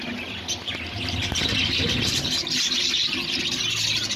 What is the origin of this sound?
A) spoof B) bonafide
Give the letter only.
B